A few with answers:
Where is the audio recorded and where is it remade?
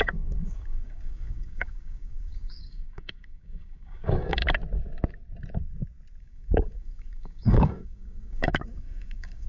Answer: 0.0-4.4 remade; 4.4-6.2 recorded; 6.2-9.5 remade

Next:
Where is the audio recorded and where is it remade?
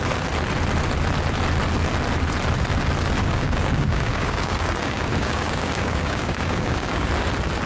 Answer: 0.0-3.2 recorded; 3.2-7.1 remade; 7.1-7.7 recorded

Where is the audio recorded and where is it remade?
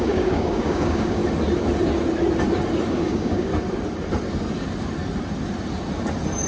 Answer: 0.0-1.2 remade; 1.2-2.9 recorded; 2.9-3.5 remade; 3.5-6.5 recorded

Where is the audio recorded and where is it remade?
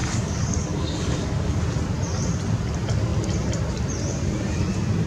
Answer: 0.0-1.6 remade; 1.6-5.1 recorded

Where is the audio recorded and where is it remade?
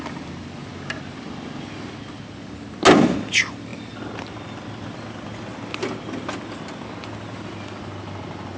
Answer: 0.0-8.6 recorded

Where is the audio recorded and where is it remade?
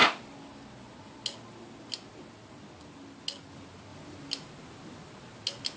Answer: 0.0-5.8 recorded